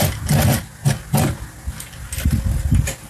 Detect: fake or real real